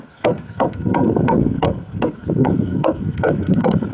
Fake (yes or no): yes